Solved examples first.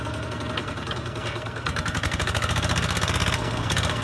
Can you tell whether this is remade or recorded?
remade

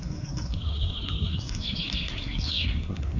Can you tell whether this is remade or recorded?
remade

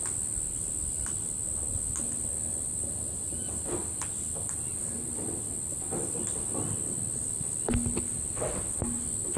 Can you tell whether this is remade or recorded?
recorded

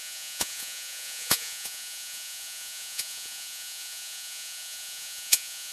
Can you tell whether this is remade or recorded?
remade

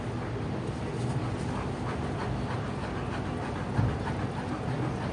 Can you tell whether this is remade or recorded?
recorded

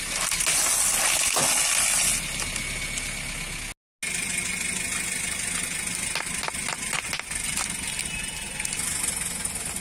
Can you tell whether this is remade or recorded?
recorded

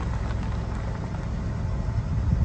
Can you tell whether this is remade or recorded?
recorded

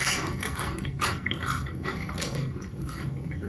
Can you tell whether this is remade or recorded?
remade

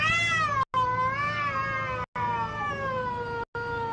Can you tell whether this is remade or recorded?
recorded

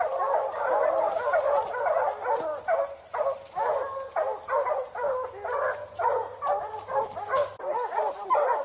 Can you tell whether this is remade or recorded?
recorded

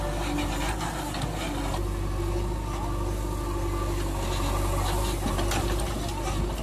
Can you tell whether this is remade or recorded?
recorded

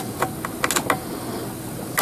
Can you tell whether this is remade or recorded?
recorded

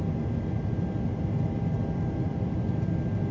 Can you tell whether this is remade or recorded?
recorded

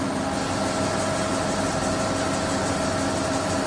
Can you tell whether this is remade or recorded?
recorded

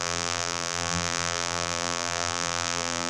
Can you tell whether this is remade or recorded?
remade